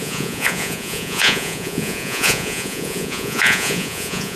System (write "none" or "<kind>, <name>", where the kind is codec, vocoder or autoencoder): vocoder, Vocos